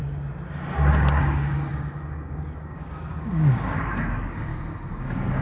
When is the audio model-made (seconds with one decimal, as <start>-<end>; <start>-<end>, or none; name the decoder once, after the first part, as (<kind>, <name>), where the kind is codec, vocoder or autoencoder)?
0.9-4.5 (codec, DAC); 5.0-5.4